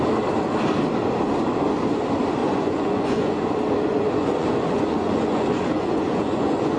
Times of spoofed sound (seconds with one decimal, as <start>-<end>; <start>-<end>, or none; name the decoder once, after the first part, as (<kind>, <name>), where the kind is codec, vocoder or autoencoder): 2.4-3.4 (vocoder, Vocos); 3.9-6.8